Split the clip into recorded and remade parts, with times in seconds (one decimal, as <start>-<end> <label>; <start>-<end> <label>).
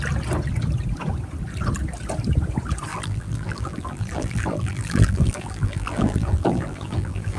0.0-2.9 recorded; 2.9-7.4 remade